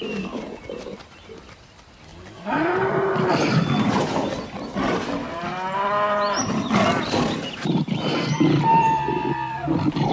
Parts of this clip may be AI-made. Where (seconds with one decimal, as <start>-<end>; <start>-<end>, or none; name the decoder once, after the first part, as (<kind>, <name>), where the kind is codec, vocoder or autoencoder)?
0.0-2.1 (vocoder, BigVGAN v2); 3.5-10.1